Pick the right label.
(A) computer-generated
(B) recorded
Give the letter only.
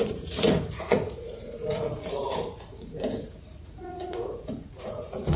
A